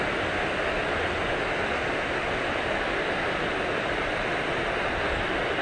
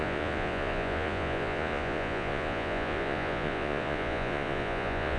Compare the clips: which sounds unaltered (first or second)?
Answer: first